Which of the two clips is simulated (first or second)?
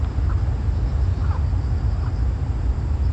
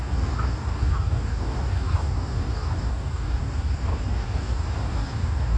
second